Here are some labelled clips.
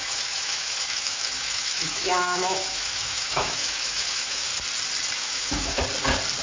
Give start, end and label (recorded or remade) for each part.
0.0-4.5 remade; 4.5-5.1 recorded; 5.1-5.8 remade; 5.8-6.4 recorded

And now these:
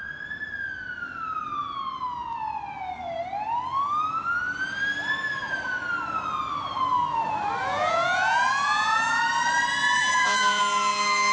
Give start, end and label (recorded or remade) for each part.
0.0-7.6 recorded; 7.6-9.2 remade; 9.2-10.0 recorded; 10.0-10.6 remade; 10.6-11.3 recorded